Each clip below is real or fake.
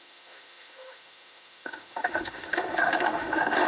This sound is fake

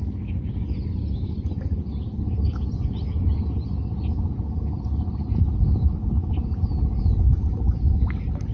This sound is real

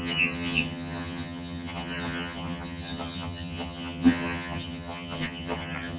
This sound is fake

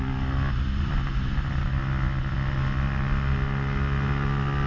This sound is real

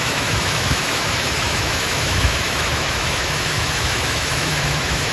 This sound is fake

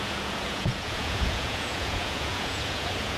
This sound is fake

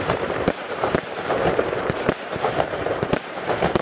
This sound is fake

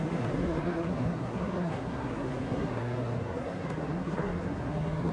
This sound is fake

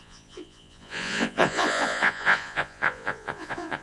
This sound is fake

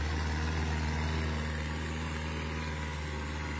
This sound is real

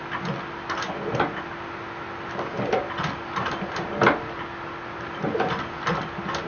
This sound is real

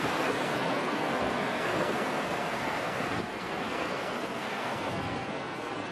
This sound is fake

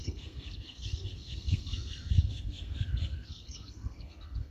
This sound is fake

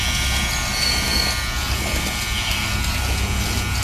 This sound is real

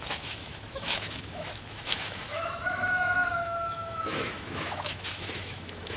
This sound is fake